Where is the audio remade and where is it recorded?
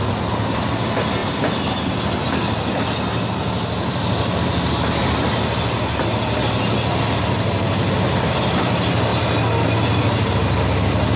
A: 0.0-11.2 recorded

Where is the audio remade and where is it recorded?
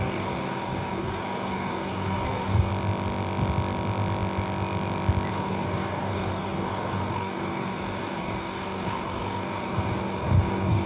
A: 0.0-2.7 remade; 2.7-5.3 recorded; 5.3-10.9 remade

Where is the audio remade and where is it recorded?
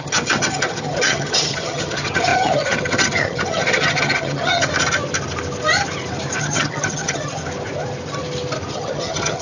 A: 0.0-4.7 remade; 4.7-6.4 recorded; 6.4-7.4 remade; 7.4-8.7 recorded; 8.7-9.4 remade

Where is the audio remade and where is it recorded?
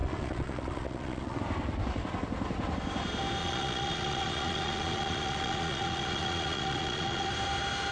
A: 0.0-1.4 remade; 1.4-3.4 recorded; 3.4-7.3 remade; 7.3-7.9 recorded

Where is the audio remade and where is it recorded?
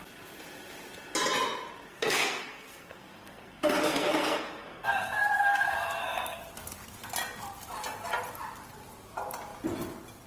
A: 0.0-1.9 recorded; 1.9-6.4 remade; 6.4-10.3 recorded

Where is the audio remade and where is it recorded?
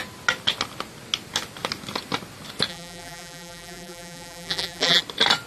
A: 0.0-2.7 recorded; 2.7-5.0 remade; 5.0-5.5 recorded